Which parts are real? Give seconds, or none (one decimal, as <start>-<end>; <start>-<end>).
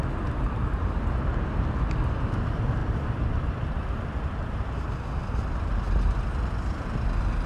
0.0-2.8; 4.7-7.5